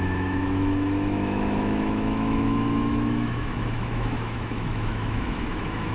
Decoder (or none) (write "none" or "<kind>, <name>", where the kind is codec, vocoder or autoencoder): autoencoder, DAC-VAE